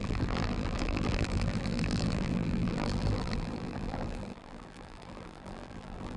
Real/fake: fake